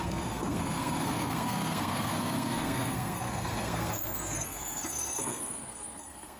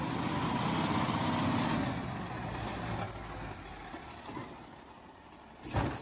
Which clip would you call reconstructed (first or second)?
first